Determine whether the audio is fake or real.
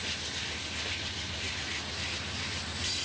real